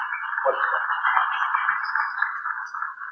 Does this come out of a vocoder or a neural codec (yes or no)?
no